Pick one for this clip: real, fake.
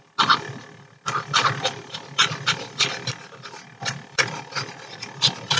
real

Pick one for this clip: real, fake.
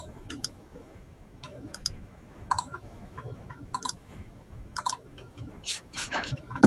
fake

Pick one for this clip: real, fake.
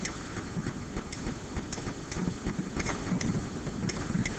real